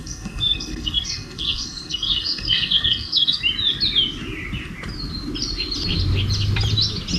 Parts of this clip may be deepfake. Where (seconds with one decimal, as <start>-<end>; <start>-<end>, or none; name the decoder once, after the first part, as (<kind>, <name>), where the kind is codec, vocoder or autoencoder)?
0.0-3.4 (codec, SNAC)